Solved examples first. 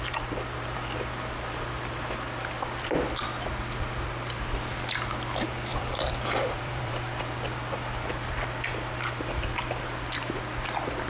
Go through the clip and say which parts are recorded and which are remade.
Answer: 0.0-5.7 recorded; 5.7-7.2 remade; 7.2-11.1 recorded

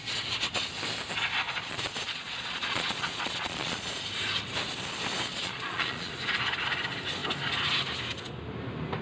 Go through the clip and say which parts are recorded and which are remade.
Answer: 0.0-1.6 recorded; 1.6-4.0 remade; 4.0-5.3 recorded; 5.3-6.1 remade; 6.1-9.0 recorded

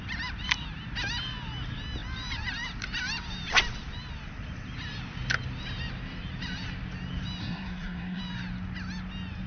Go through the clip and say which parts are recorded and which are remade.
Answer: 0.0-7.4 recorded; 7.4-8.2 remade; 8.2-9.5 recorded

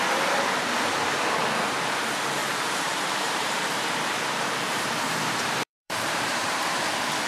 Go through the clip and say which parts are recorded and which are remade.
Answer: 0.0-2.4 recorded; 2.4-6.8 remade; 6.8-7.3 recorded

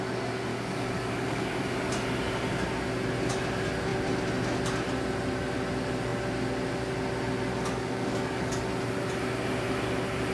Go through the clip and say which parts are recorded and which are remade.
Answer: 0.0-0.5 recorded; 0.5-1.6 remade; 1.6-7.5 recorded; 7.5-8.6 remade; 8.6-10.3 recorded

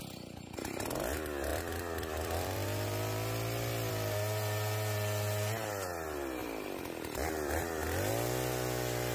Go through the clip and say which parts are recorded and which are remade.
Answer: 0.0-1.5 recorded; 1.5-3.9 remade; 3.9-6.4 recorded; 6.4-8.1 remade; 8.1-9.1 recorded

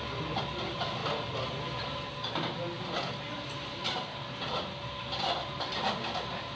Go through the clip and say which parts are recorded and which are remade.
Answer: 0.0-6.6 recorded

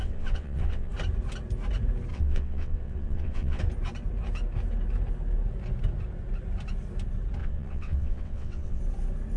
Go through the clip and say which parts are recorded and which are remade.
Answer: 0.0-0.9 remade; 0.9-2.1 recorded; 2.1-3.6 remade; 3.6-7.4 recorded; 7.4-8.8 remade; 8.8-9.4 recorded